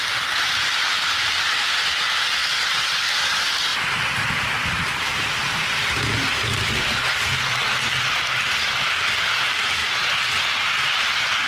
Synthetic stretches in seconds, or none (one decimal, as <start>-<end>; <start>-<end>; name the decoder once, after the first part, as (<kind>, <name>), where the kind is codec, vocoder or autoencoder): none